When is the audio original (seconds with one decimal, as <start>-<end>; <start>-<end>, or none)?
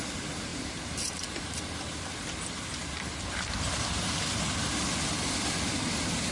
0.0-0.5; 1.7-6.3